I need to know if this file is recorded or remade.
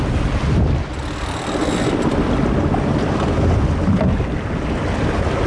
recorded